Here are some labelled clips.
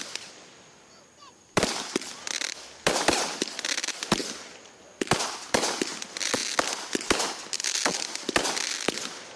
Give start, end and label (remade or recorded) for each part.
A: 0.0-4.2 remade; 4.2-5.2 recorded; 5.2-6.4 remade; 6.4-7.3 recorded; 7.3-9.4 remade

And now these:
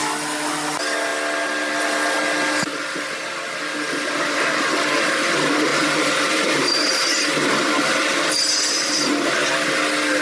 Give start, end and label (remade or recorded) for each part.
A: 0.0-5.7 recorded; 5.7-9.5 remade; 9.5-10.2 recorded

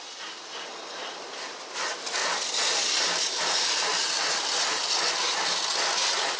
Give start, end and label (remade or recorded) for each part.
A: 0.0-6.4 recorded

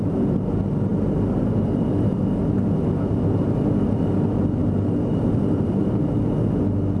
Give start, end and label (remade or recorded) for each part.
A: 0.0-0.9 recorded; 0.9-2.4 remade; 2.4-4.6 recorded; 4.6-6.0 remade; 6.0-7.0 recorded